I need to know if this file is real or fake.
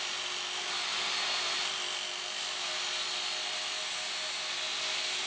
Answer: real